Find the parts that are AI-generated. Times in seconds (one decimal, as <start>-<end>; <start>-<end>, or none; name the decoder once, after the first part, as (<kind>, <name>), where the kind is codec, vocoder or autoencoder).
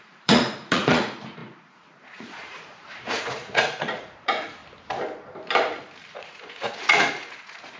0.0-4.6 (vocoder, Vocos); 6.1-7.8